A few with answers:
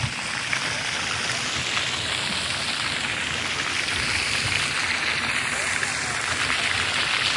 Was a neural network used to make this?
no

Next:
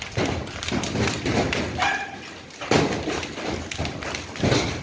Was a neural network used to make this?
no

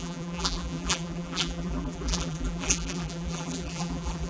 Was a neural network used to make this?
yes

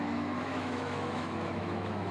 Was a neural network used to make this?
yes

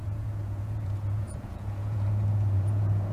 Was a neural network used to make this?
yes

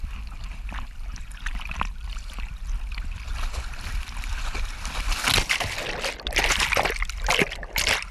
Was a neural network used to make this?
no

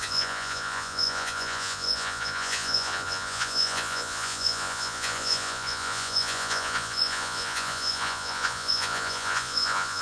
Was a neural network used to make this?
yes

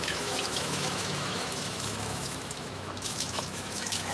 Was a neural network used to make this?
yes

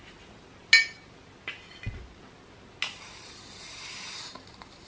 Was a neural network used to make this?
no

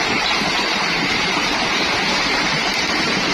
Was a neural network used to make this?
yes